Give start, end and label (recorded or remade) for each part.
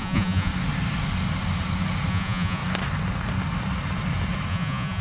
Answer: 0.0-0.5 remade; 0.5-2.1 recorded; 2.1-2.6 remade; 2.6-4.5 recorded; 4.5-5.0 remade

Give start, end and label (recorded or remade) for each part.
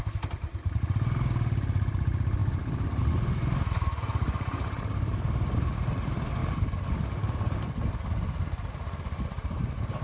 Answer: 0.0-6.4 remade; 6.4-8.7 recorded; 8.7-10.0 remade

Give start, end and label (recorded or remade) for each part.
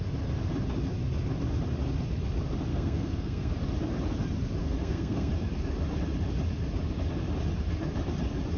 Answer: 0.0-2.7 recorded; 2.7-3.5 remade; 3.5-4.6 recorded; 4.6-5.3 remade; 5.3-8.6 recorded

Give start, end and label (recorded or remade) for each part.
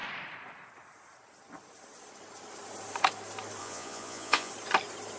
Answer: 0.0-3.6 recorded; 3.6-4.5 remade; 4.5-5.2 recorded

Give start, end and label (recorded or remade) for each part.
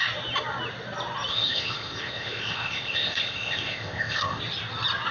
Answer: 0.0-1.3 recorded; 1.3-4.4 remade; 4.4-5.1 recorded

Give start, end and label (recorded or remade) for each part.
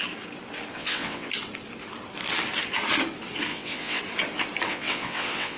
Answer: 0.0-0.7 recorded; 0.7-1.3 remade; 1.3-3.5 recorded; 3.5-4.0 remade; 4.0-4.7 recorded; 4.7-5.6 remade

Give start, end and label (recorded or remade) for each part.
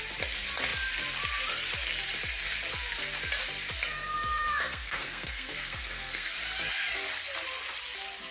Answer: 0.0-3.9 recorded; 3.9-6.3 remade; 6.3-8.3 recorded